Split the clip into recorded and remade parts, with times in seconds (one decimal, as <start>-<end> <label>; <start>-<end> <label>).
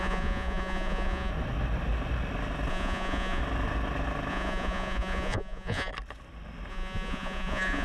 0.0-1.3 remade; 1.3-2.7 recorded; 2.7-3.4 remade; 3.4-4.3 recorded; 4.3-5.9 remade; 5.9-6.7 recorded; 6.7-7.8 remade